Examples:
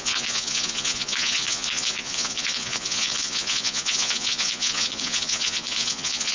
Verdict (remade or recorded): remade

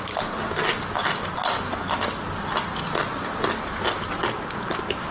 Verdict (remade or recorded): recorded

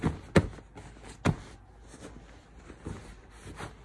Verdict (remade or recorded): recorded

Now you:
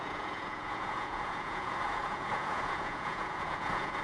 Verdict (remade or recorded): remade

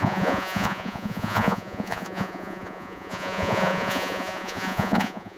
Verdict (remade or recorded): remade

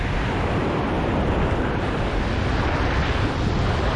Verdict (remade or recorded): recorded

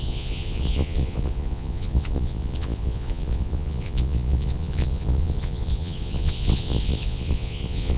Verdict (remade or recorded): remade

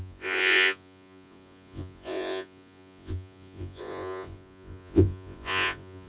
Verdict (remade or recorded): remade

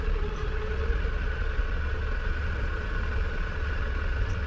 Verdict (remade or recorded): remade